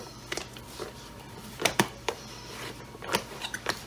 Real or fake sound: fake